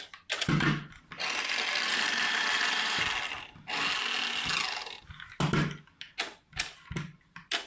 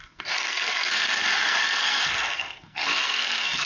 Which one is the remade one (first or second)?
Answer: second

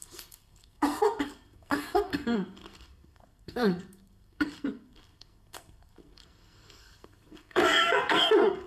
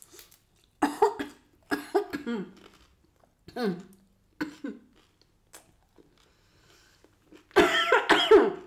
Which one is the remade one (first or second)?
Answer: first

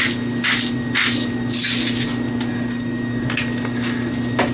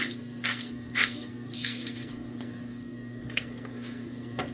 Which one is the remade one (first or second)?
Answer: second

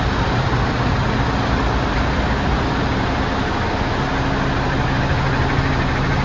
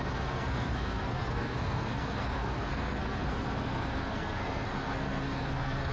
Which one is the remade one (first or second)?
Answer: second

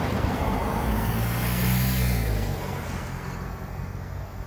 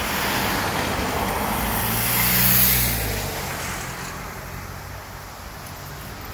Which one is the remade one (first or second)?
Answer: first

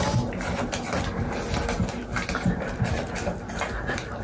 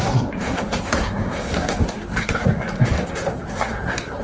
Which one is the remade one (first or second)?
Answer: second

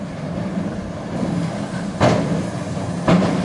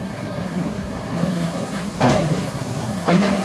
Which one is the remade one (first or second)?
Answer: second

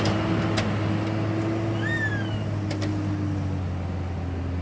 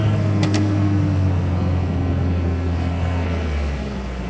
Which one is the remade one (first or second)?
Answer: second